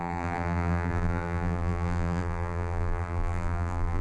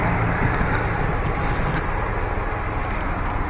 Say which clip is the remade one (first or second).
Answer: first